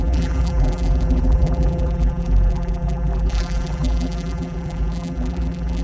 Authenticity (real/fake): fake